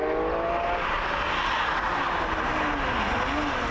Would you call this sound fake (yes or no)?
no